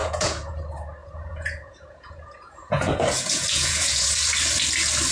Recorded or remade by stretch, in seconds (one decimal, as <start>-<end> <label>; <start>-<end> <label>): 0.0-0.6 remade; 0.6-1.0 recorded; 1.0-4.1 remade; 4.1-5.1 recorded